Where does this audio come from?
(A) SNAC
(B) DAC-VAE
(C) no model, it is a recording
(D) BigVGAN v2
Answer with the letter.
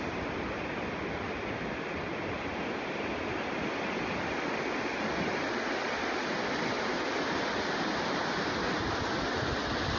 C